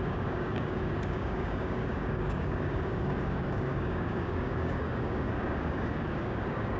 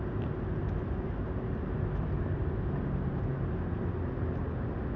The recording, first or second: second